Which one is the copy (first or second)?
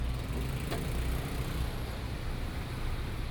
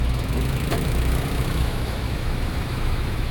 second